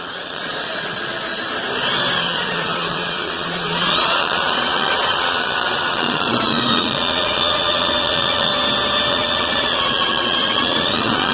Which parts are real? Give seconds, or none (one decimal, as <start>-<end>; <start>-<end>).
1.3-2.2; 8.5-9.1